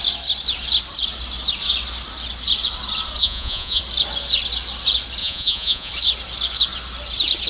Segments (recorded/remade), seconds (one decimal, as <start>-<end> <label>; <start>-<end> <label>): 0.0-3.2 recorded; 3.2-3.8 remade; 3.8-5.2 recorded; 5.2-5.9 remade; 5.9-7.5 recorded